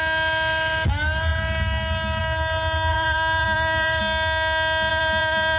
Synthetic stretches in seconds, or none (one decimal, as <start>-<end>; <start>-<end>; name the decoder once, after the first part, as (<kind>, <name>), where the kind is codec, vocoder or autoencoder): 2.9-4.0 (vocoder, BigVGAN v2); 4.9-5.6

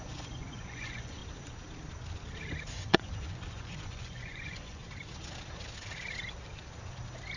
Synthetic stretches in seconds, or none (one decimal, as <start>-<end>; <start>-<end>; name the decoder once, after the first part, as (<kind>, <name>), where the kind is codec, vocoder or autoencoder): 0.0-1.2 (vocoder, Vocos); 2.7-4.8

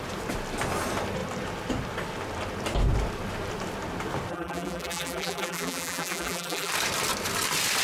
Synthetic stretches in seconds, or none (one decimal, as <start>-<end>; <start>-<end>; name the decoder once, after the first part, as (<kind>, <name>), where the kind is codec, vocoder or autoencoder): 4.3-6.7 (vocoder, BigVGAN v2)